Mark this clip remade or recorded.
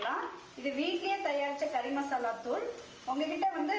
recorded